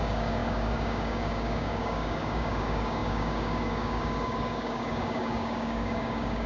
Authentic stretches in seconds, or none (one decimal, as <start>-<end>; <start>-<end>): none